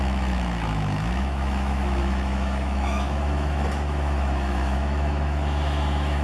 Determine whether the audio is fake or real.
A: fake